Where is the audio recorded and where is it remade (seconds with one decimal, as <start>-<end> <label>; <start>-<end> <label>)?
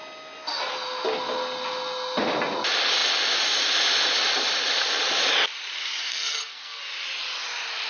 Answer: 0.0-6.0 recorded; 6.0-6.8 remade; 6.8-7.9 recorded